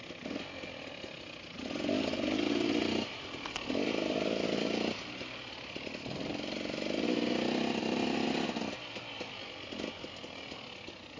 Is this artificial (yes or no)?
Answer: no